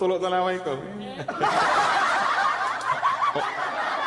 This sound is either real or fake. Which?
real